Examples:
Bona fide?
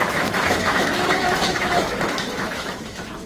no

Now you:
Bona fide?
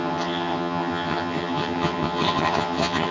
no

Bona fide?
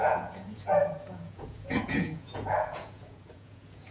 no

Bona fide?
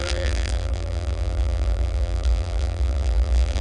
no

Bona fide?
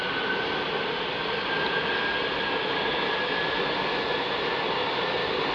yes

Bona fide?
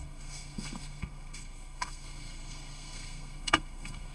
no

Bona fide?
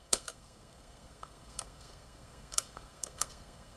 no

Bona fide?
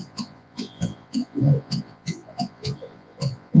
no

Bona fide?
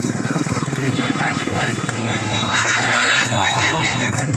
no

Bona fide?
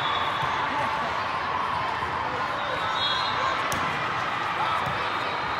yes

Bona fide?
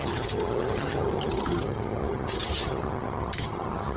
no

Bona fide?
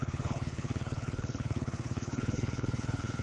no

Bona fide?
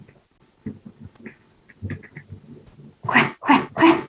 yes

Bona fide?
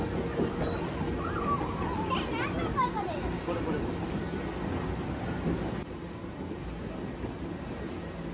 yes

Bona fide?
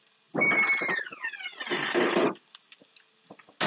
yes